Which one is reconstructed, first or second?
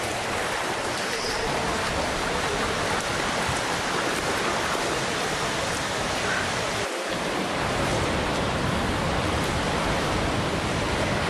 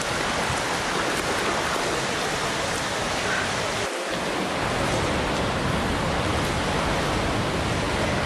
first